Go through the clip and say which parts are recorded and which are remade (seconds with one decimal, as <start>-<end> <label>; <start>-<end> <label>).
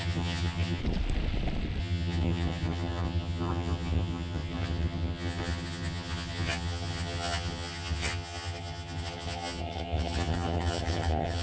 0.0-0.8 remade; 0.8-1.8 recorded; 1.8-11.4 remade